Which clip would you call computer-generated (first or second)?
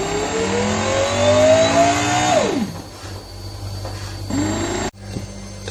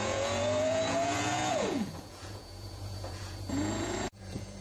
second